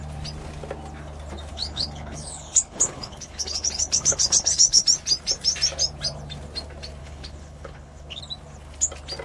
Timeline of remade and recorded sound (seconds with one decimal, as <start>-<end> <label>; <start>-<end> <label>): 0.0-1.5 recorded; 1.5-4.8 remade; 4.8-7.0 recorded; 7.0-8.2 remade; 8.2-9.2 recorded